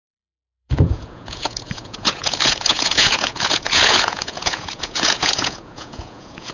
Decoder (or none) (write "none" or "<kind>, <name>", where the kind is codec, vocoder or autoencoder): vocoder, Vocos